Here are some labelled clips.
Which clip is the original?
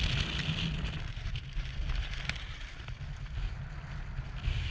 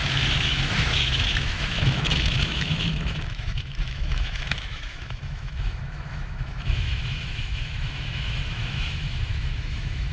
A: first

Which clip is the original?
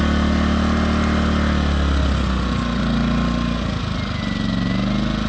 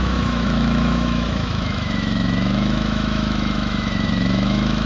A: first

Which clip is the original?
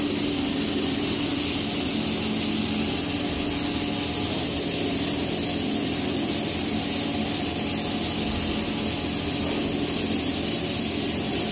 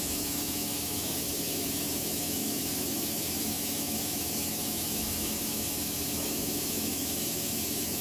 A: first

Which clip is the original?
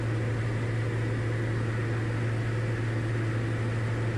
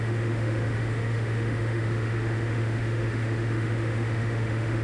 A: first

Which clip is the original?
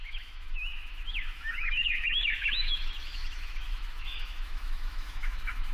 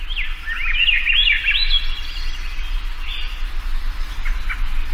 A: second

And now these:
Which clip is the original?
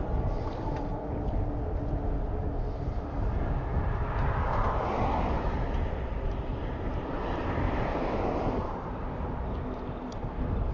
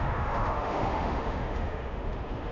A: first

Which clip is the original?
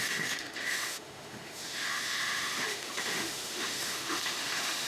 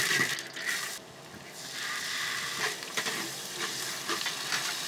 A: second